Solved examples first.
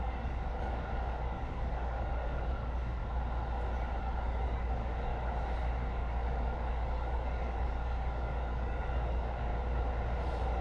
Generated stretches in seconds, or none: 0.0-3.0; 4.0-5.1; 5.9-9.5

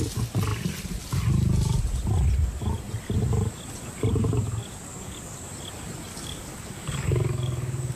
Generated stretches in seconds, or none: 4.9-5.4; 6.1-8.0

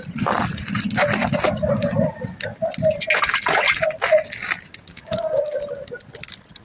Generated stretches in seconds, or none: 4.9-5.6

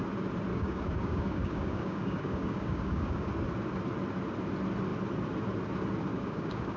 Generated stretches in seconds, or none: 0.5-3.3; 6.1-6.8

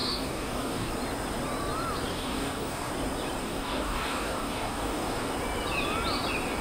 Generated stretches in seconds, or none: 0.0-0.9; 2.1-2.9; 3.4-5.3

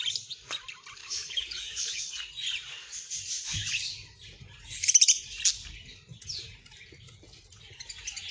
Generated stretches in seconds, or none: 1.0-2.2

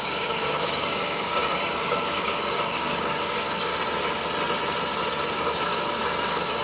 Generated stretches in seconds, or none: 0.0-3.7; 5.3-6.6